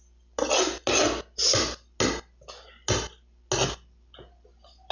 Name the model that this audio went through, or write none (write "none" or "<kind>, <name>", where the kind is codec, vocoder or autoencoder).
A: none